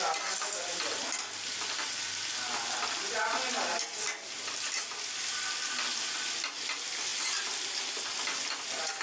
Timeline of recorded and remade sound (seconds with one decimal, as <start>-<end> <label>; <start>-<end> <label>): 0.0-9.0 recorded